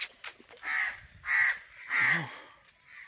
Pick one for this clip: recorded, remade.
recorded